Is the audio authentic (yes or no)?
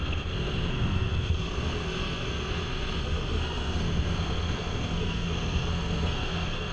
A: no